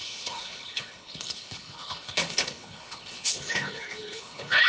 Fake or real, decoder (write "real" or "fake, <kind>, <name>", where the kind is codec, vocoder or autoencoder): fake, codec, HILCodec